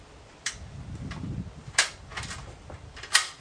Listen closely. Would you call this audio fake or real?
real